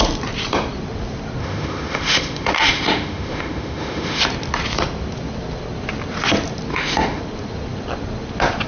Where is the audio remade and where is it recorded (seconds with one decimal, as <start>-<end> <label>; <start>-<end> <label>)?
0.0-1.4 recorded; 1.4-4.2 remade; 4.2-6.7 recorded; 6.7-7.2 remade; 7.2-8.7 recorded